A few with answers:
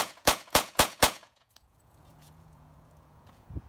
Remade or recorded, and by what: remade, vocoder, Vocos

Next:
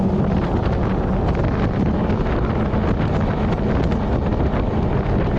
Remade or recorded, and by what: recorded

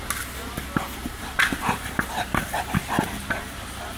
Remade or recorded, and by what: recorded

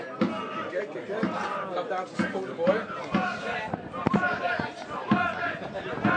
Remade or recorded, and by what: recorded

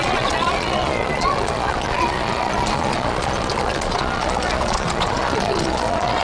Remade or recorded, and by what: remade, vocoder, Vocos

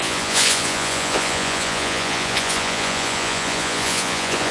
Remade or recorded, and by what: remade, vocoder, Vocos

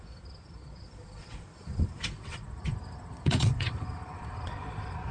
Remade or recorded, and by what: remade, vocoder, Vocos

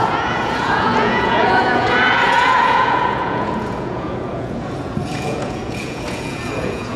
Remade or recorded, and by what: remade, vocoder, Vocos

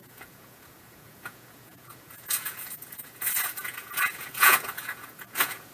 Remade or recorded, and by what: remade, vocoder, Vocos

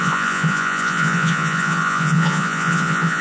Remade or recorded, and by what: remade, vocoder, Vocos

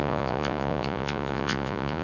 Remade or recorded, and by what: remade, vocoder, Vocos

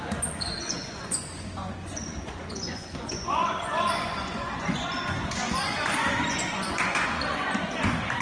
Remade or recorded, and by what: remade, vocoder, Vocos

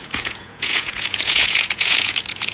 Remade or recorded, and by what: remade, vocoder, Vocos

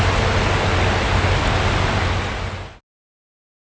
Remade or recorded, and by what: recorded